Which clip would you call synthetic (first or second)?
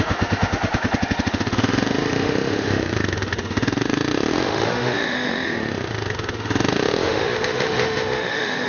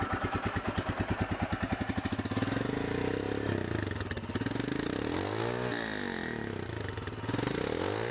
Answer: first